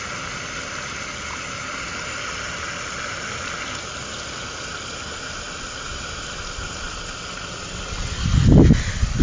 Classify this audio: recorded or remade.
recorded